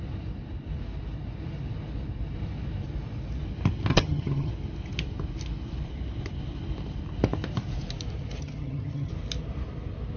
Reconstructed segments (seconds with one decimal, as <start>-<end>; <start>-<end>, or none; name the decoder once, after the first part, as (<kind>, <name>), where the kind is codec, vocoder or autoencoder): 3.9-4.5 (vocoder, HiFi-GAN); 8.4-9.1

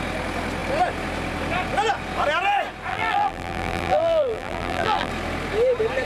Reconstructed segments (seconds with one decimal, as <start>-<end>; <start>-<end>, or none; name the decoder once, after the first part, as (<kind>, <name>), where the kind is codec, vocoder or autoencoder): 2.9-5.1 (vocoder, BigVGAN v2)